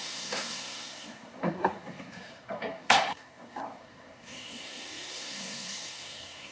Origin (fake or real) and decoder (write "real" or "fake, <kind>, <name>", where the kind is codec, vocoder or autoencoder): fake, codec, SNAC